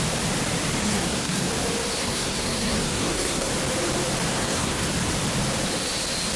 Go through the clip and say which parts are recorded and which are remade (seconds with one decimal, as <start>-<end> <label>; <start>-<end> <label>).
0.0-0.8 recorded; 0.8-1.5 remade; 1.5-2.0 recorded; 2.0-3.5 remade; 3.5-4.3 recorded; 4.3-4.9 remade; 4.9-6.4 recorded